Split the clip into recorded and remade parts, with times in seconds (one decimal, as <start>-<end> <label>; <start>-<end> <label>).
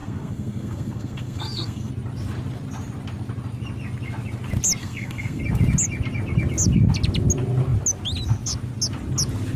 0.0-1.9 remade; 1.9-4.8 recorded; 4.8-5.4 remade; 5.4-9.6 recorded